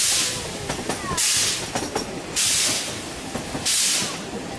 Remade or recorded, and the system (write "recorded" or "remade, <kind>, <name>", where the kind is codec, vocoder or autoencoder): recorded